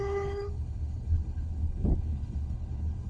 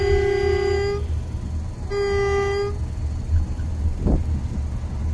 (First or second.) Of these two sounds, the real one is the second